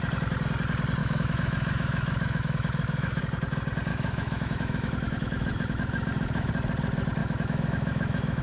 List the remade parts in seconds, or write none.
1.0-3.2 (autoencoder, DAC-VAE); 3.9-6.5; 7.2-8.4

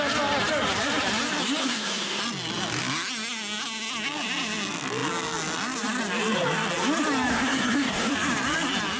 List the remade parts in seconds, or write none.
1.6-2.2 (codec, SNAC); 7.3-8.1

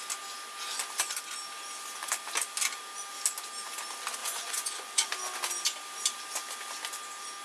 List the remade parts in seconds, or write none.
4.2-5.1 (vocoder, Vocos)

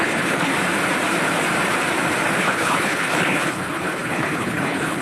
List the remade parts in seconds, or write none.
0.0-0.5 (codec, HILCodec); 2.4-5.0

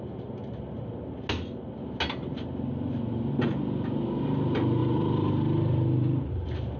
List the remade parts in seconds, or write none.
4.8-6.3 (vocoder, BigVGAN v2)

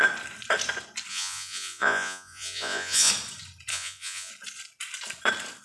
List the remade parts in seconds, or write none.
1.1-3.1 (vocoder, Vocos); 3.7-4.3

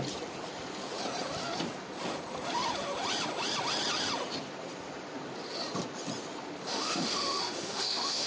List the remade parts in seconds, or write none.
6.7-8.3 (autoencoder, DAC-VAE)

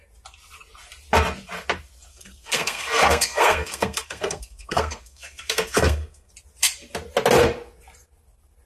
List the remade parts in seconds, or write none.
2.1-6.3 (codec, SNAC)